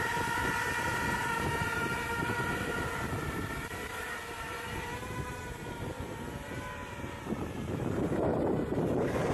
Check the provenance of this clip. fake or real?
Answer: fake